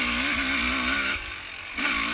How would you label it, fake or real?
real